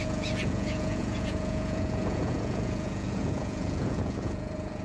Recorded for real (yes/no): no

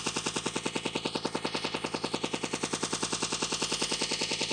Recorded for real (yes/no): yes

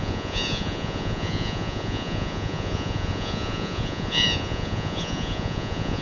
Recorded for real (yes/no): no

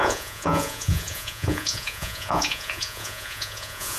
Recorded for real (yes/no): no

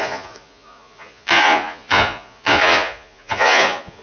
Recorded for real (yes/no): no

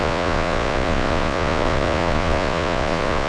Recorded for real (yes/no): no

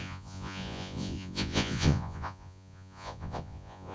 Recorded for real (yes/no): no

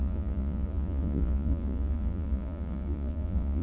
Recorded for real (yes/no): no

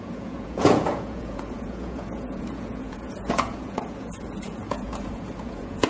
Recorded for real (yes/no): no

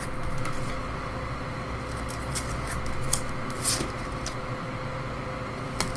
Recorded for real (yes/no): yes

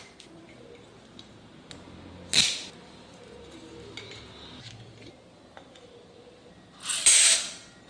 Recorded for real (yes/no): yes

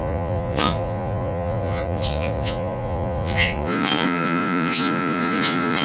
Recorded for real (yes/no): no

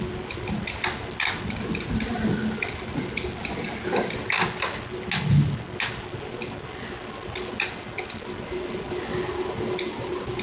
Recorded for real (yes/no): yes